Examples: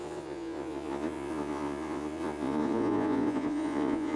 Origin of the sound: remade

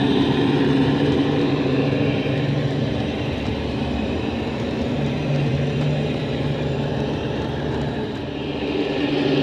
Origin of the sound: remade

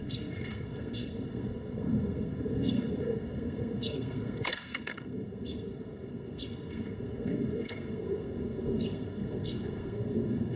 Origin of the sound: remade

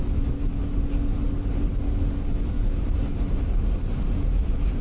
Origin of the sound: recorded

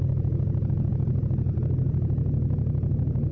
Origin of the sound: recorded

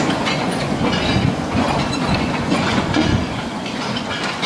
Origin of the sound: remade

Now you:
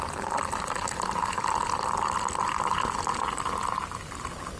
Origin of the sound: recorded